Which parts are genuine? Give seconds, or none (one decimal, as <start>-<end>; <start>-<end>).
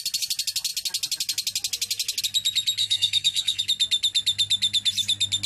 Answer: 0.0-2.8; 3.6-5.5